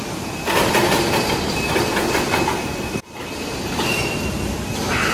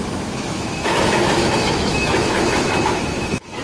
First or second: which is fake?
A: second